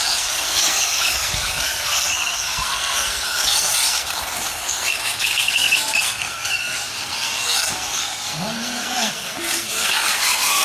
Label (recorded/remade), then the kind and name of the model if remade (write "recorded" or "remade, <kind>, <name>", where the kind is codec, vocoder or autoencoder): remade, codec, SNAC